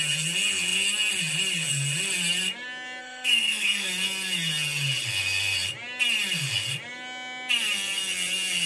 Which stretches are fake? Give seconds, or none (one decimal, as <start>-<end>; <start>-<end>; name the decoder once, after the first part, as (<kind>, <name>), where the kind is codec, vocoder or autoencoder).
3.0-3.9 (codec, SNAC)

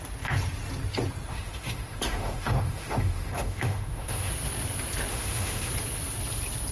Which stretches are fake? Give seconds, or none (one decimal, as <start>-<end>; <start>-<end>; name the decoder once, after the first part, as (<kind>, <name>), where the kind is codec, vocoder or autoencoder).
1.3-4.3 (autoencoder, DAC-VAE); 5.1-5.7

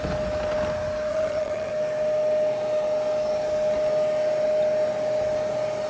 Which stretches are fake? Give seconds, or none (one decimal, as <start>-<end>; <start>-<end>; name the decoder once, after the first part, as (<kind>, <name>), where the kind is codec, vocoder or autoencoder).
1.1-1.7 (vocoder, HiFi-GAN)